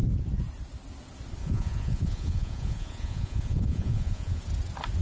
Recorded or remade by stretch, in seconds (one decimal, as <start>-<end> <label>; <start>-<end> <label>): 0.0-1.4 recorded; 1.4-4.4 remade; 4.4-5.0 recorded